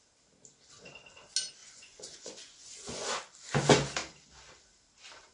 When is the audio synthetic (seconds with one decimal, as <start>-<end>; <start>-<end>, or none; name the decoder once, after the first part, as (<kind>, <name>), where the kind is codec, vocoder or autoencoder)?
1.6-3.1 (vocoder, Vocos)